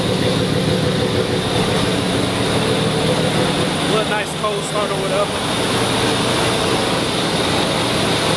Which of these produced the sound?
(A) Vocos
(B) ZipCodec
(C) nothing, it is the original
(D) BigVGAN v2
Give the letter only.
C